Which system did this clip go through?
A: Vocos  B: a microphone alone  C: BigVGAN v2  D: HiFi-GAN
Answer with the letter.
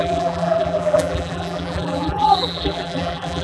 C